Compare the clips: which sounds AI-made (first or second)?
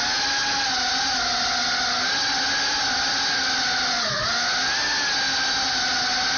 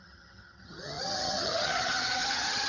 second